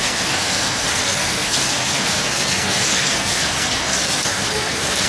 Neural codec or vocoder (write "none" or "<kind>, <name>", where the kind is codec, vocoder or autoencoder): codec, SNAC